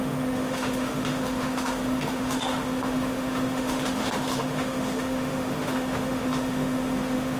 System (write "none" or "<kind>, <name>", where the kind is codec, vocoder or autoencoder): autoencoder, DAC-VAE